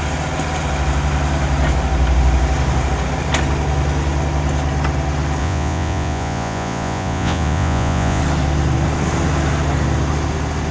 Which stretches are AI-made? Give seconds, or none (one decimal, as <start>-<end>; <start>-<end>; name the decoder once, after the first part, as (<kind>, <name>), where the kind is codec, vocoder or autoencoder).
5.4-8.2 (vocoder, Vocos)

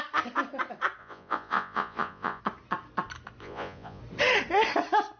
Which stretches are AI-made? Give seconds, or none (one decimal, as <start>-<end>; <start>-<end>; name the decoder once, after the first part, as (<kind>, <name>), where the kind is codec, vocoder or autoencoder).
1.0-2.4 (vocoder, Vocos); 3.4-4.0

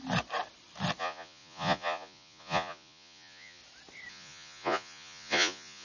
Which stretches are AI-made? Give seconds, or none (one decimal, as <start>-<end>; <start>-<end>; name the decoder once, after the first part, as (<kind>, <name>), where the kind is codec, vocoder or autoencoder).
1.0-3.6 (vocoder, Vocos); 4.1-5.8

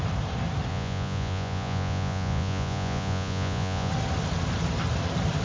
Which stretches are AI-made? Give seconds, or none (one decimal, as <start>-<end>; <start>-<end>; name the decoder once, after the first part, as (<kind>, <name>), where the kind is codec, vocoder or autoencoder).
0.7-3.9 (vocoder, Vocos)

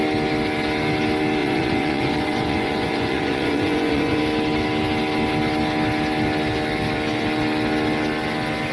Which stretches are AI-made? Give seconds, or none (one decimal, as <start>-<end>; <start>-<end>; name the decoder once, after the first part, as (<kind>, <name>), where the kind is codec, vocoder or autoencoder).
1.4-4.2 (vocoder, Vocos)